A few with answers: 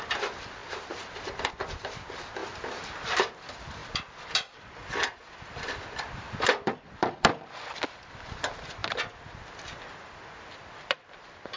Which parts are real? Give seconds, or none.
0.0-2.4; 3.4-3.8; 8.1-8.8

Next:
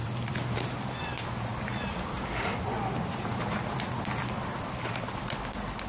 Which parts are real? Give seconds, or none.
none

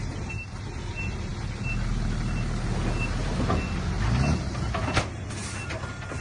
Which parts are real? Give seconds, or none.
0.0-6.2

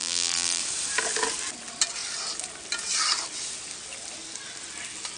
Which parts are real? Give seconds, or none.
0.6-5.2

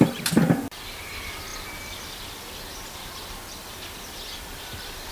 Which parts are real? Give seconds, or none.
0.0-5.1

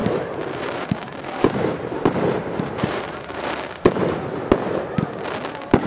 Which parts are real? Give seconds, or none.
3.5-5.9

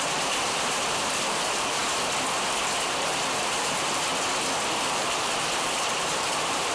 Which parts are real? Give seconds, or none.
1.8-2.5; 4.1-4.8